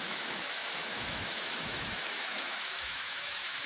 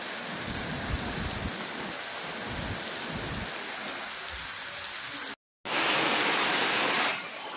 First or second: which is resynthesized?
first